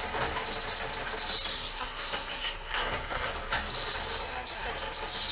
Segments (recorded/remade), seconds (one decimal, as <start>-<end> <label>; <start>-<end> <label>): 0.0-1.5 recorded; 1.5-3.3 remade; 3.3-4.2 recorded; 4.2-4.7 remade; 4.7-5.3 recorded